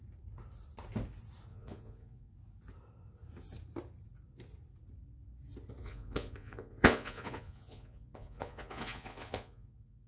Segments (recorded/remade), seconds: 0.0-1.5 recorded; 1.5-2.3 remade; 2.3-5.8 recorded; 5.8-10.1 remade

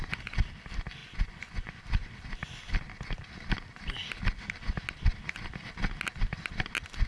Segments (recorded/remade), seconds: 0.0-1.0 recorded; 1.0-1.8 remade; 1.8-7.1 recorded

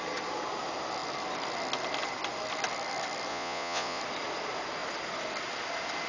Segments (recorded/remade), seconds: 0.0-3.3 recorded; 3.3-4.0 remade; 4.0-6.1 recorded

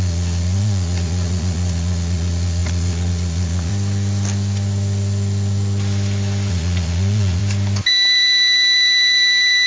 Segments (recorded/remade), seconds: 0.0-3.7 remade; 3.7-6.5 recorded; 6.5-7.4 remade; 7.4-9.7 recorded

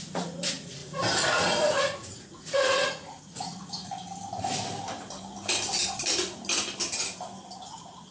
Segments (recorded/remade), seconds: 0.0-3.9 remade; 3.9-7.6 recorded; 7.6-8.1 remade

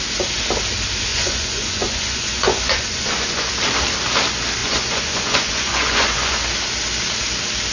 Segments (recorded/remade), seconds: 0.0-1.1 recorded; 1.1-3.5 remade; 3.5-4.6 recorded; 4.6-6.4 remade; 6.4-7.7 recorded

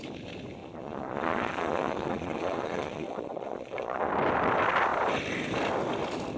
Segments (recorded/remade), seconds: 0.0-0.6 recorded; 0.6-4.1 remade; 4.1-6.4 recorded

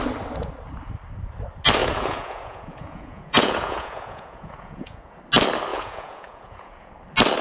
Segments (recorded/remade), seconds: 0.0-1.8 recorded; 1.8-5.2 remade; 5.2-5.7 recorded; 5.7-6.9 remade; 6.9-7.4 recorded